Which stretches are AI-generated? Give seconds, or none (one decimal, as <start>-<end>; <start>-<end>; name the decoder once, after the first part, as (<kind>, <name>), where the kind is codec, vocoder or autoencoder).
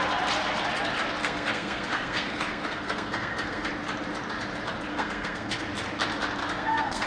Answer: 1.2-3.7 (codec, SNAC); 4.9-5.7; 6.4-7.1